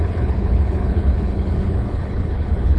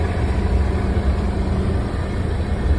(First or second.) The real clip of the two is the second